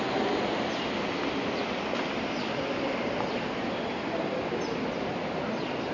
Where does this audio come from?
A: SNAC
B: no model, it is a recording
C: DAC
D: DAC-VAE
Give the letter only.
B